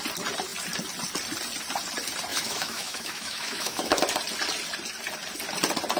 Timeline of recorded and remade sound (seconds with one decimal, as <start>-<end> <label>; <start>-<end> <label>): 0.0-2.3 recorded; 2.3-4.0 remade; 4.0-6.0 recorded